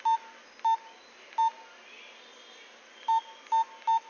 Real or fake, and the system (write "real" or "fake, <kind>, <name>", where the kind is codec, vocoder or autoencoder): real